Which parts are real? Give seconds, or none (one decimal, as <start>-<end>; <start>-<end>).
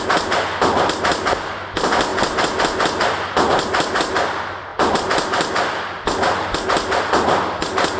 0.0-8.0